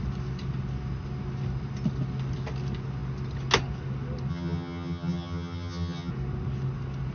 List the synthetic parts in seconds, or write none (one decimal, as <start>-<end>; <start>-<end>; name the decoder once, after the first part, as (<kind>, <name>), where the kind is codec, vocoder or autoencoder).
4.3-6.1 (vocoder, HiFi-GAN)